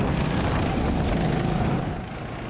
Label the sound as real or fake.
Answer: real